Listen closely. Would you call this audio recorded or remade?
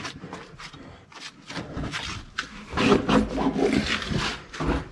recorded